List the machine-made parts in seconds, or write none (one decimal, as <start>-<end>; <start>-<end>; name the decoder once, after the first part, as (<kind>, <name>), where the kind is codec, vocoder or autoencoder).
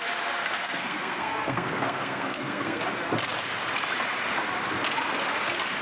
0.4-2.8 (codec, SNAC)